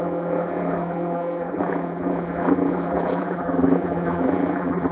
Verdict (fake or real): fake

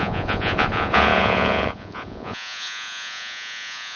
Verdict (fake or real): fake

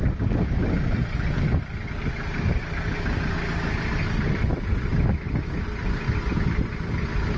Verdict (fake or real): real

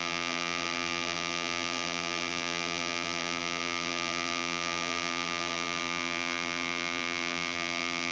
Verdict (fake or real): fake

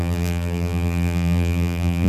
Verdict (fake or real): fake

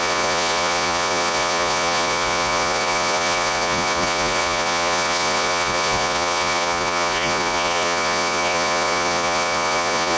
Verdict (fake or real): fake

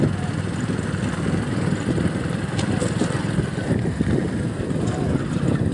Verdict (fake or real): real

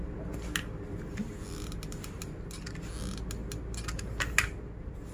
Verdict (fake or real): real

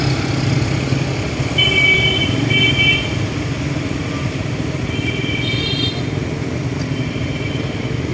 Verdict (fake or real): real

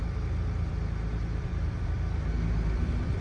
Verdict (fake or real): fake